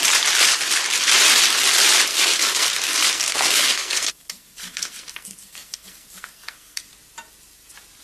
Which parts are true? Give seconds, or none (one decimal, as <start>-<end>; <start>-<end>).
0.0-2.1; 6.9-8.0